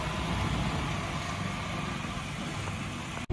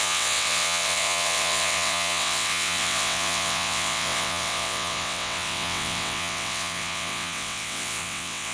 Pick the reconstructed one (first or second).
second